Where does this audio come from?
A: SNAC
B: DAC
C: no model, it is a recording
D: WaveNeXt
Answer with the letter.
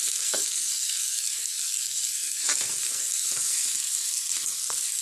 A